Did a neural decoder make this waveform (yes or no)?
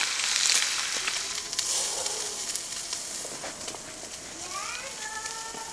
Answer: no